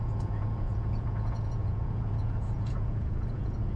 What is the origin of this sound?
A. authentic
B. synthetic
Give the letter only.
B